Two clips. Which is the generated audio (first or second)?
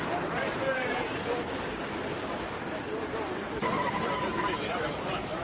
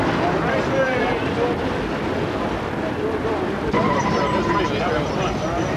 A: first